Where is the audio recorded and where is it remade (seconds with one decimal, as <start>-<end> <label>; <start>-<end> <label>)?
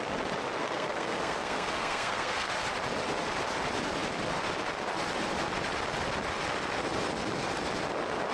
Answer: 0.0-0.6 recorded; 0.6-2.5 remade; 2.5-8.3 recorded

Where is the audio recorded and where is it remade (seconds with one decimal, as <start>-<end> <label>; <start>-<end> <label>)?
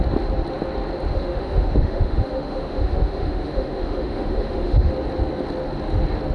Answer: 0.0-1.1 recorded; 1.1-4.9 remade; 4.9-6.3 recorded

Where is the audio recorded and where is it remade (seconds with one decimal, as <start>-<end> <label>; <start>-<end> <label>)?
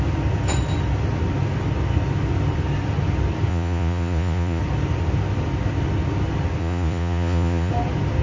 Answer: 0.0-3.5 recorded; 3.5-4.6 remade; 4.6-6.6 recorded; 6.6-7.7 remade; 7.7-8.2 recorded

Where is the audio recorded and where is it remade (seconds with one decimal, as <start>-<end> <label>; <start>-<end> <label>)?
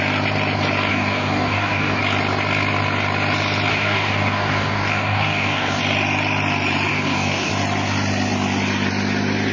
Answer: 0.0-0.9 recorded; 0.9-2.0 remade; 2.0-3.7 recorded; 3.7-5.8 remade; 5.8-6.9 recorded; 6.9-7.5 remade; 7.5-9.5 recorded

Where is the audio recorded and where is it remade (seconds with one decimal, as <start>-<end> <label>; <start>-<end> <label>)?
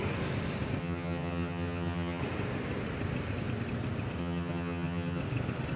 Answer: 0.0-0.8 recorded; 0.8-2.2 remade; 2.2-4.2 recorded; 4.2-5.2 remade; 5.2-5.8 recorded